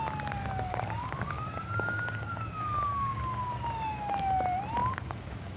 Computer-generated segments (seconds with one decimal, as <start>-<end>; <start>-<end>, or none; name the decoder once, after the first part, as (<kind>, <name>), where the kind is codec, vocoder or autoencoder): 0.7-4.1 (codec, DAC); 4.8-5.6